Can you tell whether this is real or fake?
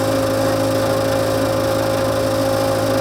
real